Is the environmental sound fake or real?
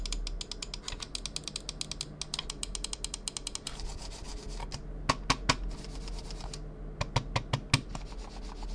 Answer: real